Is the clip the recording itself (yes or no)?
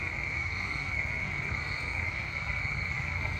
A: no